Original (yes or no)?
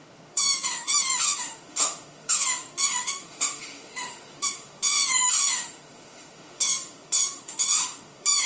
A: no